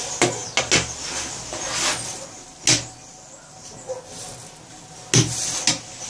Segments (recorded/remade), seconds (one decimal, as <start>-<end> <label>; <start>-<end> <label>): 0.0-6.1 recorded

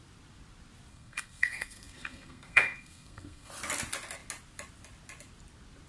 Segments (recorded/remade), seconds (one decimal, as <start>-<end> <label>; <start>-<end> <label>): 0.0-0.9 recorded; 0.9-3.5 remade; 3.5-5.9 recorded

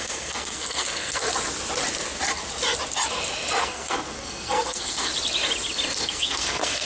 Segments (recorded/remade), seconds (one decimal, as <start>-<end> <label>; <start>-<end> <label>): 0.0-1.3 remade; 1.3-3.6 recorded; 3.6-5.1 remade; 5.1-6.0 recorded; 6.0-6.8 remade

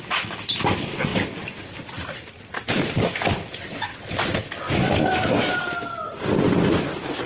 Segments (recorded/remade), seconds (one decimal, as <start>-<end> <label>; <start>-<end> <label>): 0.0-7.3 recorded

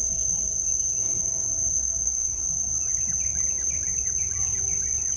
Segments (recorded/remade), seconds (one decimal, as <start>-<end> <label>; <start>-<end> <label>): 0.0-1.6 recorded; 1.6-2.4 remade; 2.4-5.2 recorded

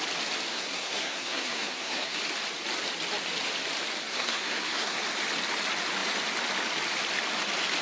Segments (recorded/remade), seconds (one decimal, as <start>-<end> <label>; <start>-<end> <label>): 0.0-0.5 recorded; 0.5-2.2 remade; 2.2-4.1 recorded; 4.1-5.0 remade; 5.0-7.8 recorded

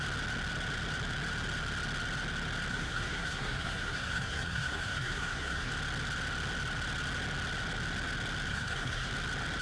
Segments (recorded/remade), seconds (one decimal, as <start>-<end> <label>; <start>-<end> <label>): 0.0-2.7 recorded; 2.7-5.7 remade; 5.7-8.5 recorded; 8.5-9.1 remade; 9.1-9.6 recorded